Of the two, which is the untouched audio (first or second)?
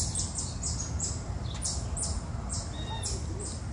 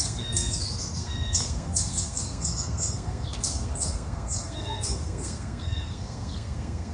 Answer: first